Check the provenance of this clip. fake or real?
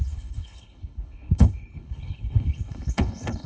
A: fake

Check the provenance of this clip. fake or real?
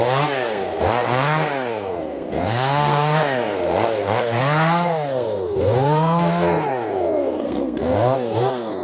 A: fake